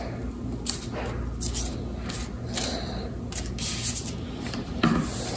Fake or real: real